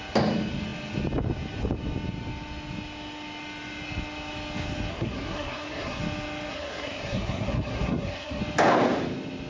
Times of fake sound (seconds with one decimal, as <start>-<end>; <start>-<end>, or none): 4.9-6.0; 6.5-8.4